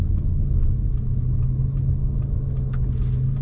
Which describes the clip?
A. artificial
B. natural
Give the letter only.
B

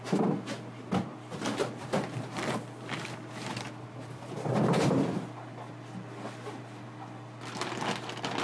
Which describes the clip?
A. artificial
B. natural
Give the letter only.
B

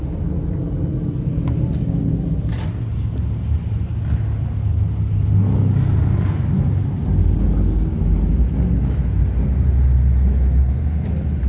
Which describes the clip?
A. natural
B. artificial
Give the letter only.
A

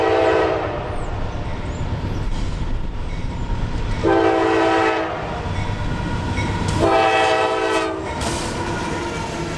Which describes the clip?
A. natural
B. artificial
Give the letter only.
A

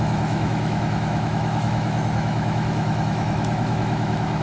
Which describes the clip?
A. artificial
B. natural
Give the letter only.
A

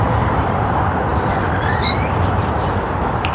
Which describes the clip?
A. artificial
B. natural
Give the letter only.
B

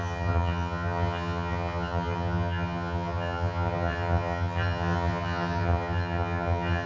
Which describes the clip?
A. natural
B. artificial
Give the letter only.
B